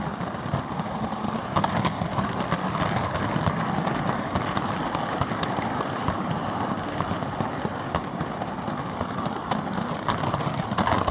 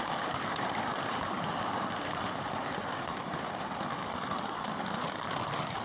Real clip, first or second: first